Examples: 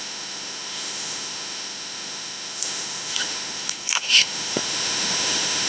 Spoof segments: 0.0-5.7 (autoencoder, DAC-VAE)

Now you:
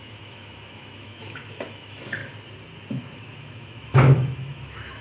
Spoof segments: 0.0-2.2 (autoencoder, DAC-VAE); 3.0-5.0

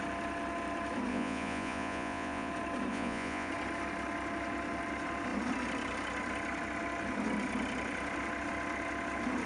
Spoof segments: 1.1-2.5 (vocoder, Vocos); 2.9-3.5